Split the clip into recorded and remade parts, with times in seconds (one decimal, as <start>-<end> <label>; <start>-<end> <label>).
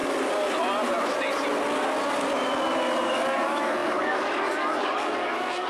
0.0-3.0 recorded; 3.0-5.7 remade